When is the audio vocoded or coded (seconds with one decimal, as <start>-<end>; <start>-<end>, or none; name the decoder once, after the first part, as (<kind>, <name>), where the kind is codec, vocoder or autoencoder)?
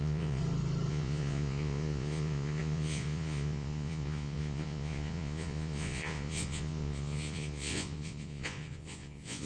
0.0-0.4 (vocoder, Vocos); 0.9-9.5